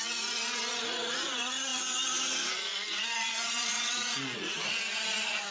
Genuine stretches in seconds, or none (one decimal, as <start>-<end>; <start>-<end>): none